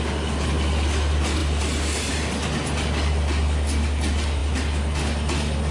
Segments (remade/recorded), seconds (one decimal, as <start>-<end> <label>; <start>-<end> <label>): 0.0-5.7 recorded